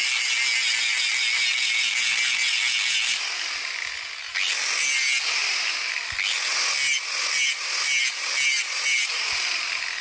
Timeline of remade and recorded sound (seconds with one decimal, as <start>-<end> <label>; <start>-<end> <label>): 0.0-10.0 recorded

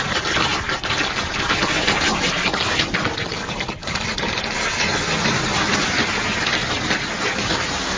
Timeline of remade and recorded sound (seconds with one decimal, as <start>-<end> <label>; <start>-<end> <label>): 0.0-8.0 recorded

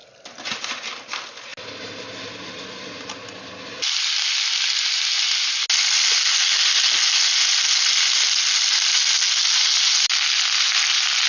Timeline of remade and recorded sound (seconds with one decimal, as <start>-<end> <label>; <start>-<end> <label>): 0.0-11.3 recorded

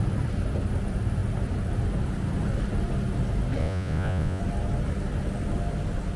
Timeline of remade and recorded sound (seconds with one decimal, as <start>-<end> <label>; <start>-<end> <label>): 0.0-3.6 recorded; 3.6-4.4 remade; 4.4-6.2 recorded

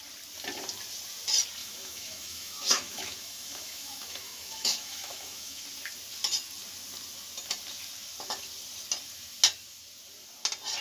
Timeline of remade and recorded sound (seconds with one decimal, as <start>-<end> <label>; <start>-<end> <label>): 0.0-1.6 recorded; 1.6-5.6 remade; 5.6-10.8 recorded